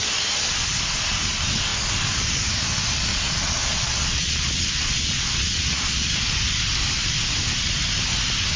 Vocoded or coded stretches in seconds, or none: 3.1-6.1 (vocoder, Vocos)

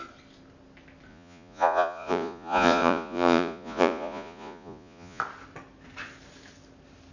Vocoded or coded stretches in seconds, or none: 1.1-5.2 (vocoder, Vocos)

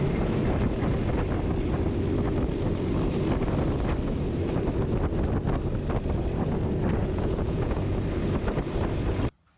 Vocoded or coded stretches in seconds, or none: 7.0-7.8 (vocoder, Vocos)

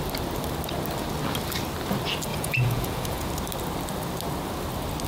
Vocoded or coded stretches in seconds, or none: 2.3-3.3 (vocoder, Vocos)